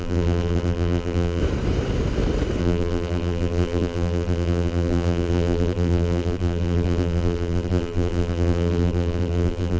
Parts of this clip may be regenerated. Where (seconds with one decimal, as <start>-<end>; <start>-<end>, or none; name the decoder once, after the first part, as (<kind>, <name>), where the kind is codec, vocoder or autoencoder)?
0.0-1.4 (vocoder, BigVGAN v2); 2.6-9.8